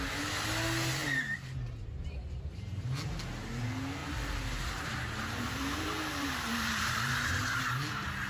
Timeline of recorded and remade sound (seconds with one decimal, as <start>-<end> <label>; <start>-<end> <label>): 0.0-1.0 recorded; 1.0-3.0 remade; 3.0-4.0 recorded; 4.0-7.6 remade; 7.6-8.3 recorded